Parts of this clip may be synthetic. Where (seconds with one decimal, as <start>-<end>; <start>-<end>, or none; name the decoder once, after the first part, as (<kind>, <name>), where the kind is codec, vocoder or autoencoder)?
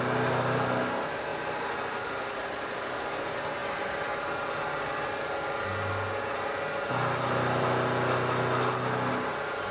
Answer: 1.3-3.1 (vocoder, BigVGAN v2)